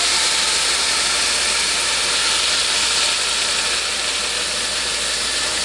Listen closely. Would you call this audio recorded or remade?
recorded